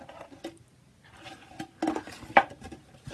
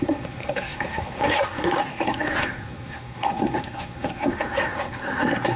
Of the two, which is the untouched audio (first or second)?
first